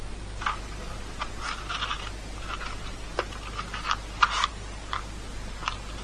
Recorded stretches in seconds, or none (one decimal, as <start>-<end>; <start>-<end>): 0.0-6.0